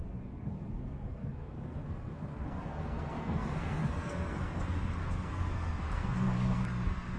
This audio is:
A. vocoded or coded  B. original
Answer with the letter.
A